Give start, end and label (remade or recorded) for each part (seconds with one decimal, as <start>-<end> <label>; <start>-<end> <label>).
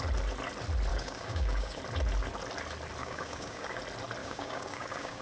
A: 0.0-0.9 recorded; 0.9-1.8 remade; 1.8-3.0 recorded; 3.0-3.8 remade; 3.8-4.2 recorded; 4.2-5.2 remade